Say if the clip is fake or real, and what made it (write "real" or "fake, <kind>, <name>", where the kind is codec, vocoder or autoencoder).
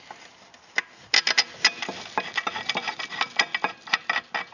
real